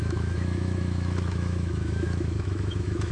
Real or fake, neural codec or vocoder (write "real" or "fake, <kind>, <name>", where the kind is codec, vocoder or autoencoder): fake, autoencoder, DAC-VAE